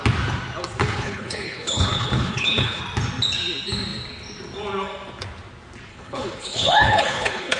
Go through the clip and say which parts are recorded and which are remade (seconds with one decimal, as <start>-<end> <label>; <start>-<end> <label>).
0.0-0.8 recorded; 0.8-2.8 remade; 2.8-5.9 recorded; 5.9-7.6 remade